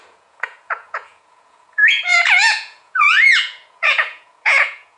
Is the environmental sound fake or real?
fake